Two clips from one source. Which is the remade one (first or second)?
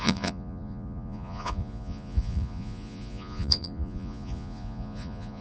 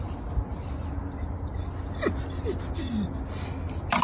first